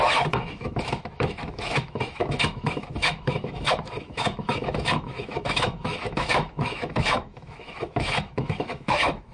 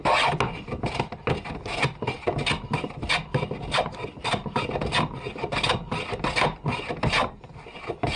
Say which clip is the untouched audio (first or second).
second